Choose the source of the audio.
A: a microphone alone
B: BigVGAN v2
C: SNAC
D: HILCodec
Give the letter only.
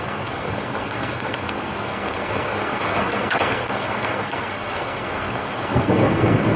C